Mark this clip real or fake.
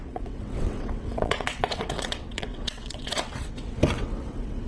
fake